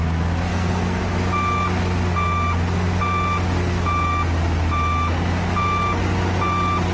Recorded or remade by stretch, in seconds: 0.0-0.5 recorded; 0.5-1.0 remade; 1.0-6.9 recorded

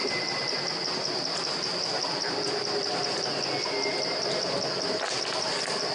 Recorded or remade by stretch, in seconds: 0.0-5.9 recorded